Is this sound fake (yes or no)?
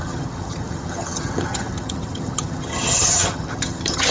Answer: yes